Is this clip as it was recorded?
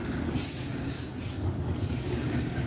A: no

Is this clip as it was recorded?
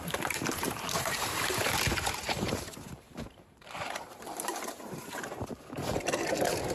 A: no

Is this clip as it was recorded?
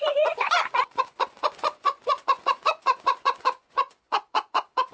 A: no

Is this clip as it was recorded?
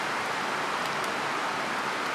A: yes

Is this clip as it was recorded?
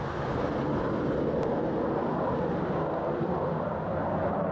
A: yes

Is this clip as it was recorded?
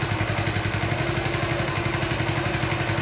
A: yes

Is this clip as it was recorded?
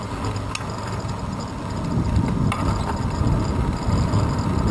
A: yes